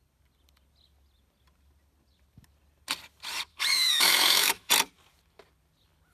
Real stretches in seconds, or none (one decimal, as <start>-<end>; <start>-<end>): 0.0-3.5; 4.7-6.1